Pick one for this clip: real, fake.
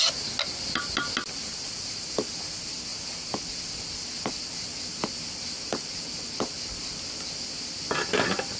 real